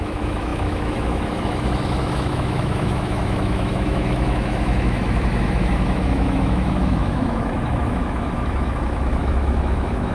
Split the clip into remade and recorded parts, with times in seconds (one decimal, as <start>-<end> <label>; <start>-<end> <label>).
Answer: 0.0-10.1 remade